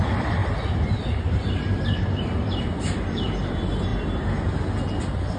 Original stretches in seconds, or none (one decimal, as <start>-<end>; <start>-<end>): 3.9-5.0